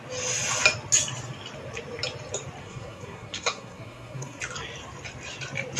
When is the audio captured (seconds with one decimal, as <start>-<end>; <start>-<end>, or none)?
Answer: 0.0-2.6; 4.4-5.8